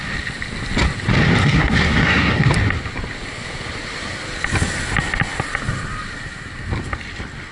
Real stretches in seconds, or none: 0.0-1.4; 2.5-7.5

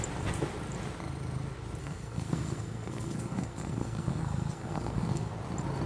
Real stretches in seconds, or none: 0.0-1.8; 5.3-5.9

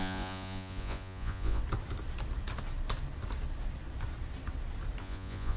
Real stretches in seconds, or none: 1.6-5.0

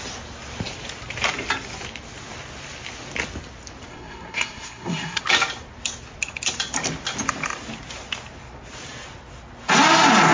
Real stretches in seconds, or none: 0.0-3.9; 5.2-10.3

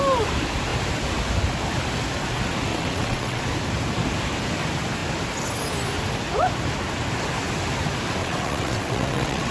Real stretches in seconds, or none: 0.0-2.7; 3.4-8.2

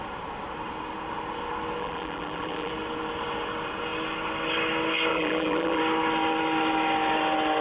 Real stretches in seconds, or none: 0.0-1.8; 2.7-5.1; 5.8-7.6